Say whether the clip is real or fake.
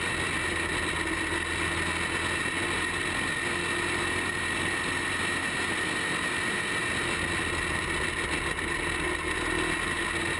real